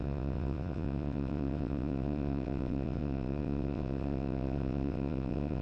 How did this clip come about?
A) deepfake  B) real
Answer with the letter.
A